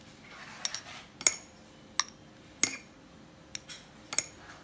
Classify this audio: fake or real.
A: real